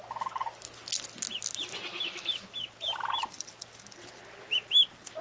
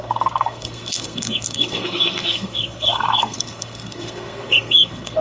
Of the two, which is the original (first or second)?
first